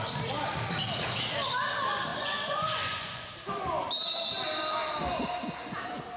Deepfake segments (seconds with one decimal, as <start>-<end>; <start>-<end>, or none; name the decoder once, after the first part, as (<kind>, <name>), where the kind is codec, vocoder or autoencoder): 2.1-3.3 (vocoder, Vocos)